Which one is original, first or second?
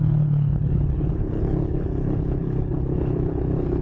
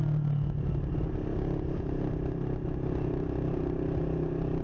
second